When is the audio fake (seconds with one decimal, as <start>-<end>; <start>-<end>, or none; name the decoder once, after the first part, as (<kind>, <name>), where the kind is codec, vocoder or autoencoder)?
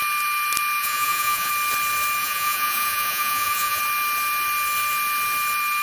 0.8-1.5 (vocoder, Vocos); 2.2-3.8